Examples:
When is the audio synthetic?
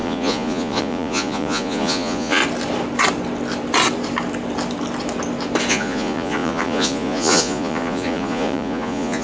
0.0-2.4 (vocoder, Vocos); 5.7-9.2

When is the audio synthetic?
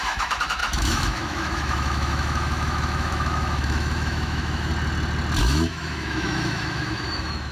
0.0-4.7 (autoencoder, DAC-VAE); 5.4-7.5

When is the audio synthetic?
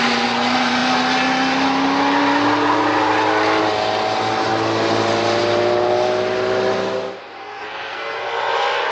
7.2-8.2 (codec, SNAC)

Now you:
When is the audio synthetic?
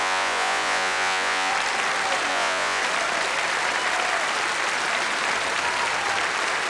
0.0-1.5 (vocoder, Vocos); 2.3-2.8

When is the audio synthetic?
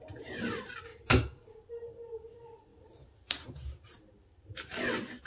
0.0-0.9 (vocoder, BigVGAN v2); 1.7-5.3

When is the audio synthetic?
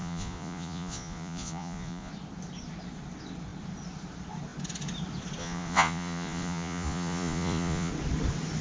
0.0-2.1 (vocoder, Vocos); 5.4-7.9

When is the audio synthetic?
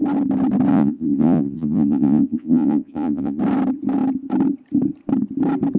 0.7-3.4 (vocoder, Vocos)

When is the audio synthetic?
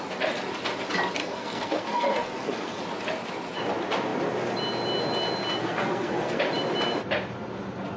1.2-2.8 (codec, SNAC); 5.6-6.4